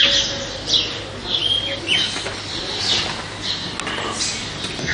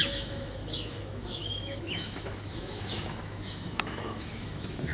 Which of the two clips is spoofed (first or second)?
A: second